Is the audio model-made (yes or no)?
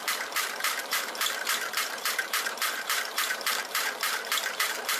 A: yes